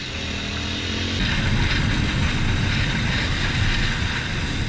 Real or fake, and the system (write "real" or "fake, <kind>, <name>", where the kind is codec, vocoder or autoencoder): real